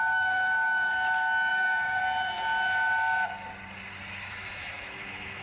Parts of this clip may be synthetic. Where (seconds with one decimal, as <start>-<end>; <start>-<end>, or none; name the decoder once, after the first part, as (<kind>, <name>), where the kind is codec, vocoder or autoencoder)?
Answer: 0.0-0.9 (autoencoder, DAC-VAE); 1.5-2.0; 4.2-5.4